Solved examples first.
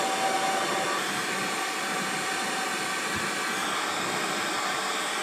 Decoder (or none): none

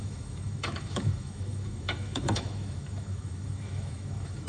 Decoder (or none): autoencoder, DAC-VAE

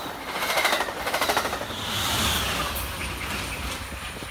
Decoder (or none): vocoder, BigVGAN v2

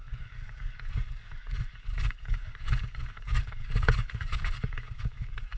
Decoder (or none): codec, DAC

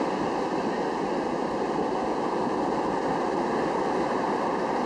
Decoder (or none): none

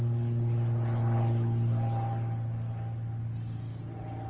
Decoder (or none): none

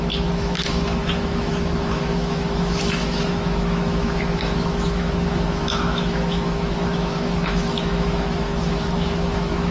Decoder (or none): autoencoder, DAC-VAE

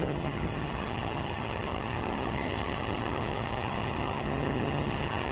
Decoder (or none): vocoder, HiFi-GAN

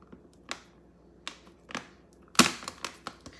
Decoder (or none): none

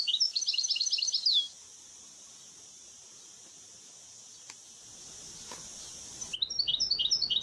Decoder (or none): none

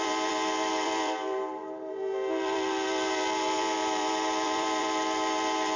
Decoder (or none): vocoder, BigVGAN v2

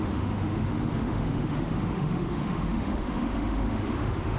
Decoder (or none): autoencoder, DAC-VAE